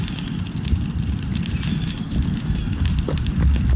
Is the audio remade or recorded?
recorded